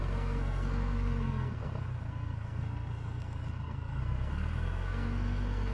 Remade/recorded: remade